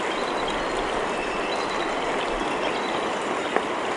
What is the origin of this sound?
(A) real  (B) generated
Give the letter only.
A